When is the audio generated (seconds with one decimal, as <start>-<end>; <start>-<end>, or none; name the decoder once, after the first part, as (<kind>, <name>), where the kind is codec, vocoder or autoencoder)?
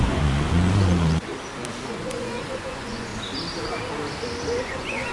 0.0-1.3 (vocoder, Vocos); 1.9-3.1; 4.6-5.1